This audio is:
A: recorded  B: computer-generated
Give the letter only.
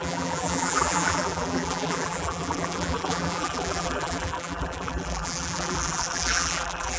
B